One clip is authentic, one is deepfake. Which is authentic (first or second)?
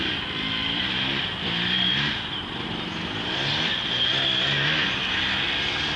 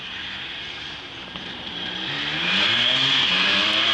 first